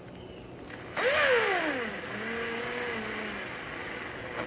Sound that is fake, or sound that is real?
real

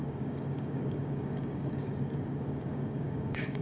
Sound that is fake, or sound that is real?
fake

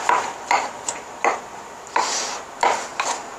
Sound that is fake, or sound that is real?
real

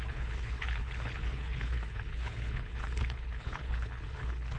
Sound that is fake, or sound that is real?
fake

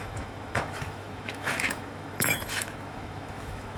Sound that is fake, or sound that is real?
fake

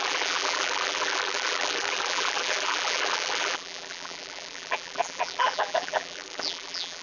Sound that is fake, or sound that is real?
fake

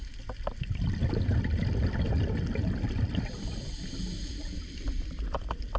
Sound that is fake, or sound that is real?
real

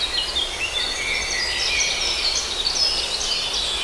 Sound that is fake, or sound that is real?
real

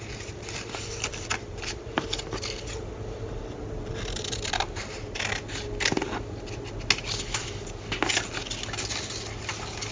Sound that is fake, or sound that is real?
real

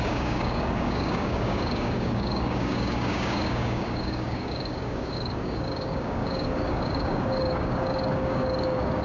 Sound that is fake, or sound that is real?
fake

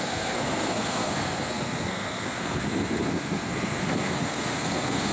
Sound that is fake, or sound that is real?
fake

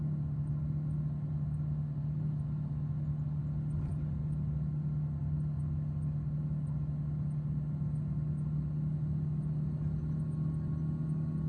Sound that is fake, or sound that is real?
real